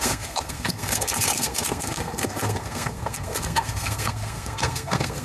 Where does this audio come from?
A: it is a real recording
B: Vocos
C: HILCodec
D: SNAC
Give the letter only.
D